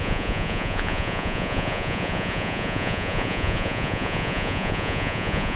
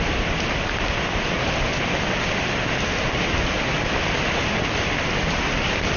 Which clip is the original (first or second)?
second